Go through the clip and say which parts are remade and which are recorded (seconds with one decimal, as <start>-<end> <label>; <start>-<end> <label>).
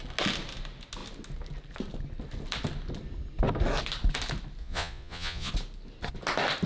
0.0-4.6 recorded; 4.6-5.5 remade; 5.5-6.7 recorded